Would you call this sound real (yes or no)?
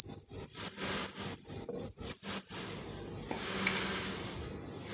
yes